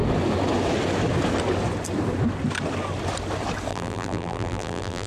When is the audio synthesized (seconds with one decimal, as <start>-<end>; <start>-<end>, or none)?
3.7-5.1